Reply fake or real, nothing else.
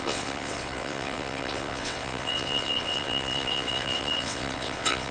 fake